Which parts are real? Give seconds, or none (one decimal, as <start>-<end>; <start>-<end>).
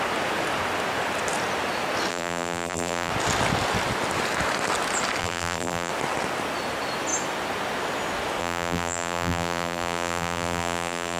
0.0-2.1; 3.1-5.2; 5.9-8.4